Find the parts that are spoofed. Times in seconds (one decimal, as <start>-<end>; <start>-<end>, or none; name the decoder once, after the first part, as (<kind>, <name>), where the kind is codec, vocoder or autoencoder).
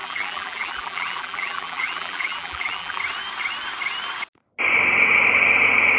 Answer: 0.0-3.0 (vocoder, BigVGAN v2)